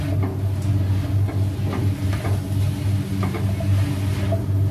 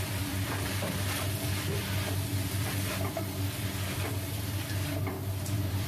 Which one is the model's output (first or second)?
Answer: second